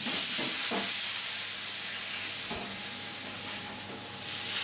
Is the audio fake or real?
real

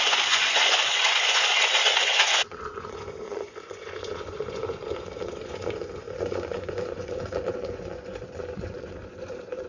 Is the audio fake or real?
fake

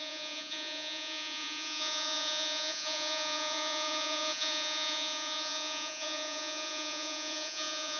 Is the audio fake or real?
fake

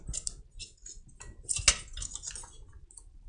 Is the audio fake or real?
real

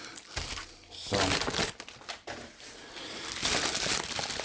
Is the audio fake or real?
real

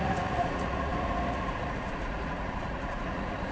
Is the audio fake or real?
fake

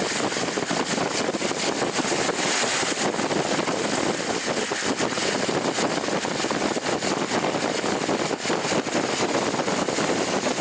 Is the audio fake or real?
real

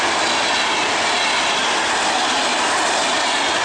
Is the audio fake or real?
real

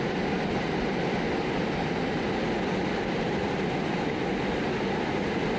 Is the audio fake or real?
real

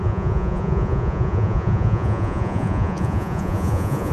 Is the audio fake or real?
fake